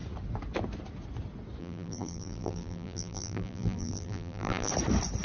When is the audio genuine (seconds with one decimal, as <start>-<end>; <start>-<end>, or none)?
0.0-1.6; 4.7-5.2